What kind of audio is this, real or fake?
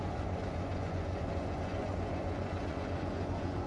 fake